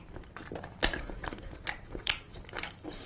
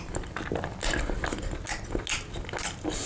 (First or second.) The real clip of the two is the second